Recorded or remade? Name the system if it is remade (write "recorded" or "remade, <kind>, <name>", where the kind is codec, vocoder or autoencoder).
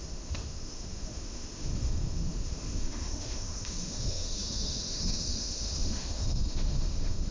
remade, autoencoder, DAC-VAE